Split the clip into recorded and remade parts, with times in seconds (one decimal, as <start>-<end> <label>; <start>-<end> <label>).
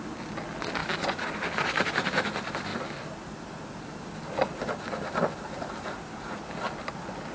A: 0.0-7.3 recorded